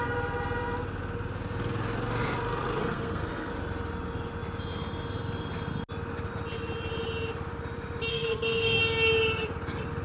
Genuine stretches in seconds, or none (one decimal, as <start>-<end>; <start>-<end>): 0.0-2.8; 3.5-8.1; 8.8-10.0